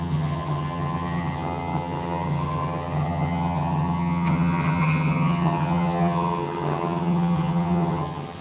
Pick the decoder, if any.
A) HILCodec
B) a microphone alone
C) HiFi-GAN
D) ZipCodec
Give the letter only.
C